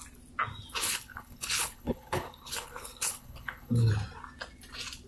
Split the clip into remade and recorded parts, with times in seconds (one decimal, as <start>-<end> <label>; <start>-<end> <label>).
0.0-0.8 recorded; 0.8-3.9 remade; 3.9-5.1 recorded